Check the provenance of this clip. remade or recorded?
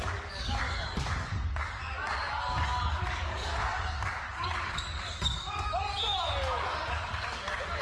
remade